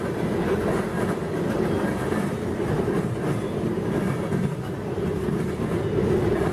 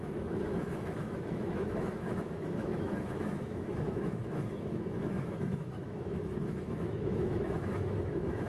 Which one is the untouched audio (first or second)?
first